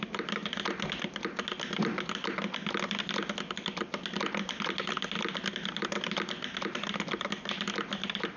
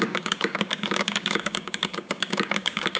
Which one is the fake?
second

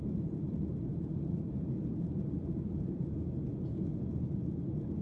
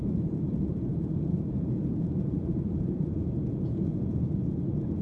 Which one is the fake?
second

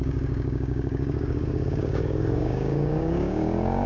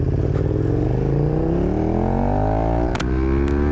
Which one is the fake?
first